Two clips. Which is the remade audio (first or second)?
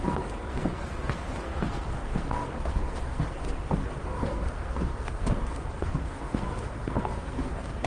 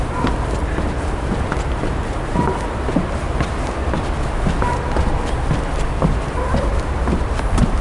first